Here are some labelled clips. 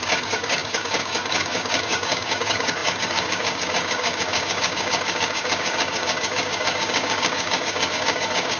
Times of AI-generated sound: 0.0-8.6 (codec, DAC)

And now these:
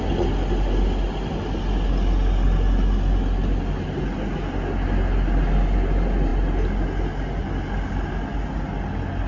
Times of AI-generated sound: none

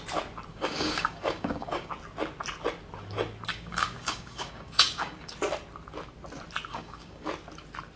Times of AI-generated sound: 0.5-1.9 (codec, DAC); 3.5-5.3; 6.7-7.3

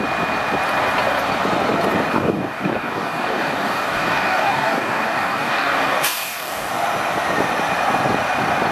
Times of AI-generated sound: 2.1-6.7 (codec, DAC)

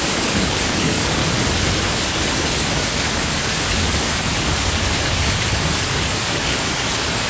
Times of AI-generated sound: 0.0-1.2 (codec, DAC); 1.8-7.3

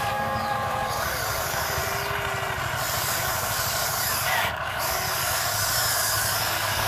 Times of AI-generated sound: 0.0-1.8 (codec, DAC); 3.0-6.9